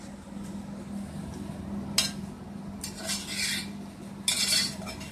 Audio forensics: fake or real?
real